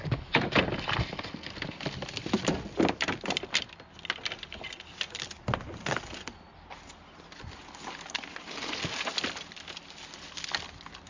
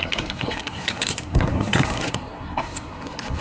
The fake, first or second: second